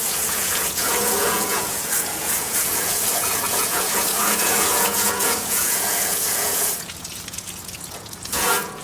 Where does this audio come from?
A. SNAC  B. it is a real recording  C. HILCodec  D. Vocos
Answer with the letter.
D